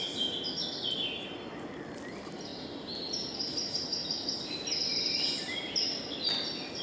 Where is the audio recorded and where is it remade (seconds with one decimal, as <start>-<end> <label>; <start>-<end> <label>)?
0.0-6.8 recorded